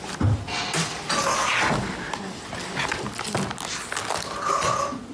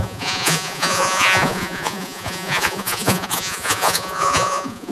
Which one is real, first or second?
first